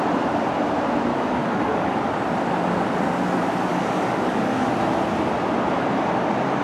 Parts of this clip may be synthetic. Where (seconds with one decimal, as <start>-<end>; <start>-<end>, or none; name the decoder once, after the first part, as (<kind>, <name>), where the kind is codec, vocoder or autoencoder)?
1.1-2.1 (codec, DAC); 3.7-4.7